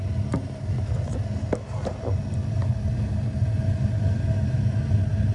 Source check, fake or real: real